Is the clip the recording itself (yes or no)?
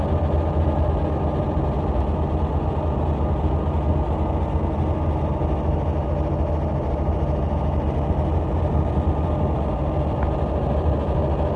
yes